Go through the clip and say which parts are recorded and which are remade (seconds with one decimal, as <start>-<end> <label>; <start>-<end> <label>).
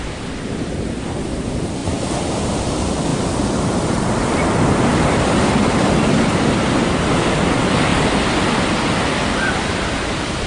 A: 0.0-3.1 remade; 3.1-6.9 recorded; 6.9-7.9 remade; 7.9-9.6 recorded; 9.6-10.5 remade